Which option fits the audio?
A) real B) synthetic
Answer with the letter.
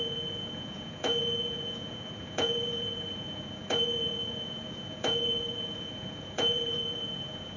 B